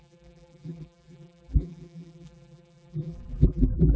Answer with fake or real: fake